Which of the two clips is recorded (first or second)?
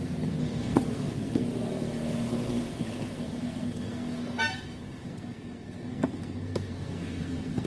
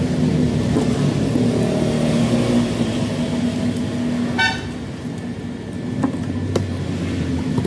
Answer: second